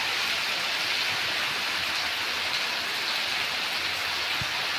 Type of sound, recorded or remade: recorded